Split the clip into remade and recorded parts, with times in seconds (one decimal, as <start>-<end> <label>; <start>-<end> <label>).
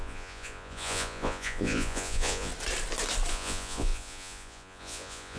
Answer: 0.0-2.5 remade; 2.5-3.3 recorded; 3.3-5.4 remade